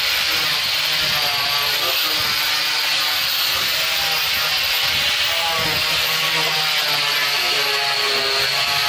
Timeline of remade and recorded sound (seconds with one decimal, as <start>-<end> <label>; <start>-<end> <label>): 0.0-8.9 recorded